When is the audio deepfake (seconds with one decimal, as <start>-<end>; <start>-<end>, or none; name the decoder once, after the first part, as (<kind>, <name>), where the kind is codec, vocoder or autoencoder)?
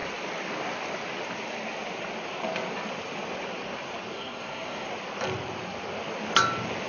4.1-4.9 (codec, SNAC)